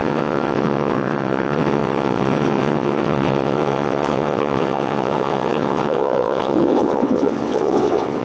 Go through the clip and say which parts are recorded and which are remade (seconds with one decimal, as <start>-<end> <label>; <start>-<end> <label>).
0.0-8.2 remade